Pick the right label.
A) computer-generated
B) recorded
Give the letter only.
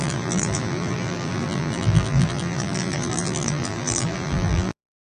A